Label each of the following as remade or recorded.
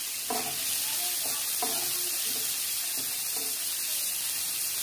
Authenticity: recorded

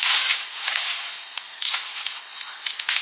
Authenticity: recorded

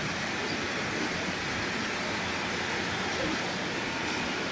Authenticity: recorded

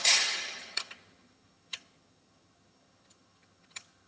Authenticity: remade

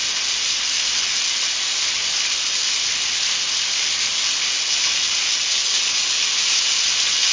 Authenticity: recorded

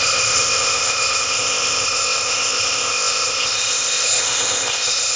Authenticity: remade